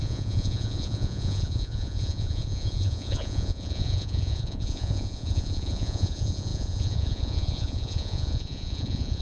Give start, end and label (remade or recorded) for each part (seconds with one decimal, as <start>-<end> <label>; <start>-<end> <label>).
0.0-9.2 remade

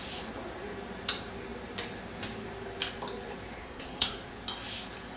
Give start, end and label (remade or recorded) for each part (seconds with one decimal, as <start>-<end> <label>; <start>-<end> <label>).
0.0-3.6 recorded; 3.6-4.3 remade; 4.3-5.2 recorded

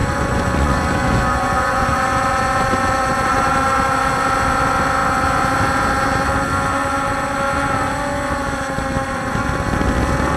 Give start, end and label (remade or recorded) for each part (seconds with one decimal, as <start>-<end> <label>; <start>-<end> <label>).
0.0-3.3 remade; 3.3-10.4 recorded

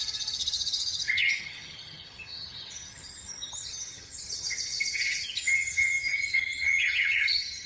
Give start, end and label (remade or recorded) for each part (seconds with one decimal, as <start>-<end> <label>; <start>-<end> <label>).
0.0-7.7 remade